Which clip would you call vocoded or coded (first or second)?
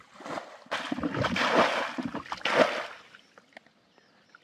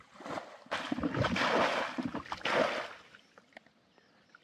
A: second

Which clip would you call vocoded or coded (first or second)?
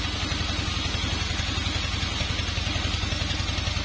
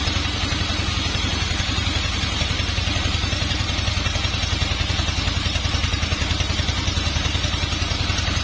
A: second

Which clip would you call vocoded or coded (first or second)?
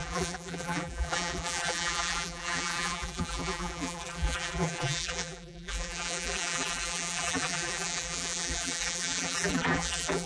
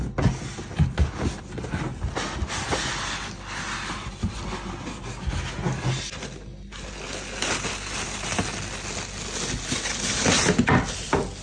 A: first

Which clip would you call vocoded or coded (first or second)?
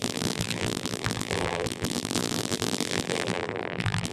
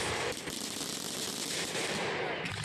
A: first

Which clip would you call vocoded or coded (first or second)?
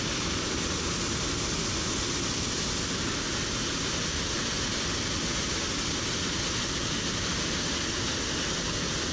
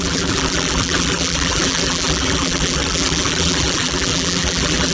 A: second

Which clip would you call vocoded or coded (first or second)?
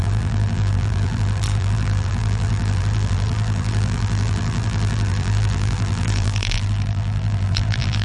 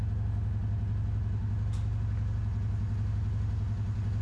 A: first